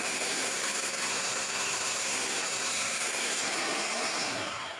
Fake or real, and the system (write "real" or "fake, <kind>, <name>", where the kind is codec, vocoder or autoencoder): fake, codec, SNAC